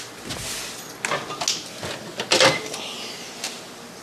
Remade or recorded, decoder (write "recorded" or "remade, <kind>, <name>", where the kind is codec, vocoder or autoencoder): recorded